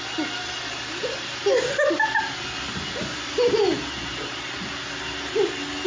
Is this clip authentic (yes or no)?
yes